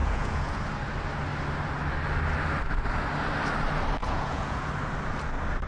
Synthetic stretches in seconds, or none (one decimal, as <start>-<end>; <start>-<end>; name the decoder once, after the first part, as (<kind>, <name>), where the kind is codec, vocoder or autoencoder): 0.0-0.6 (vocoder, Vocos); 4.0-4.7